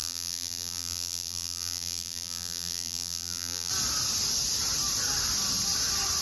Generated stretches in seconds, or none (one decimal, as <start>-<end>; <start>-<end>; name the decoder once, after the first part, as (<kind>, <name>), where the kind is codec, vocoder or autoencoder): 0.0-3.7 (vocoder, BigVGAN v2)